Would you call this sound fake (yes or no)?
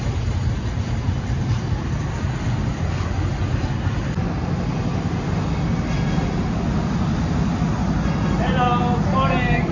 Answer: no